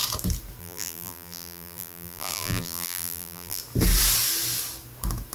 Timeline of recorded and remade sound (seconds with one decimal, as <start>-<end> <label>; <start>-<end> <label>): 0.0-0.6 recorded; 0.6-3.6 remade; 3.6-5.3 recorded